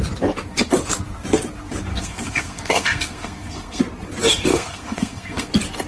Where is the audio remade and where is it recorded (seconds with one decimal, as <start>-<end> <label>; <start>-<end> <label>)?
0.0-1.9 recorded; 1.9-3.8 remade; 3.8-4.5 recorded; 4.5-5.5 remade; 5.5-5.9 recorded